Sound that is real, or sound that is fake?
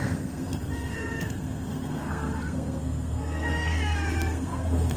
fake